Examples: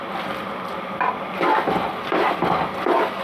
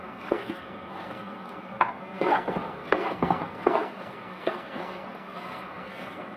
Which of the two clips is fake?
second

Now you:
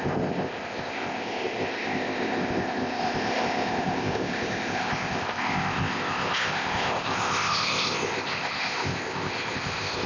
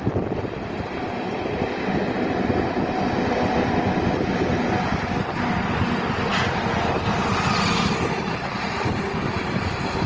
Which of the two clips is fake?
first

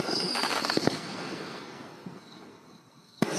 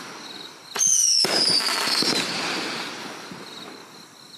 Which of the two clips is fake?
first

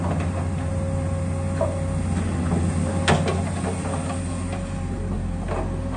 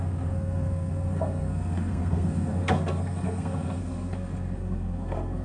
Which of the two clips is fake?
second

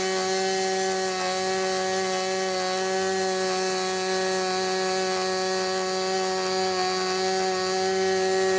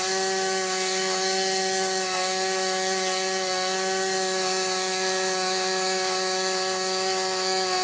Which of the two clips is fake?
second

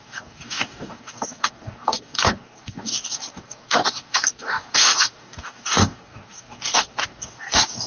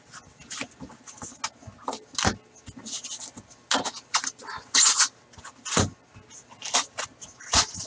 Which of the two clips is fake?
first